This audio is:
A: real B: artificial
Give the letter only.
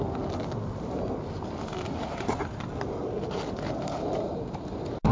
A